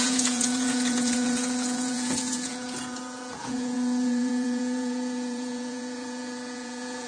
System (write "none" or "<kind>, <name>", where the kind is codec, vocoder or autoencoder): vocoder, Vocos